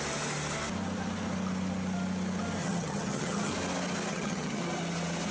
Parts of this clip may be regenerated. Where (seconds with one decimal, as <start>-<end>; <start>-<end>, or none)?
2.6-3.5; 4.1-4.6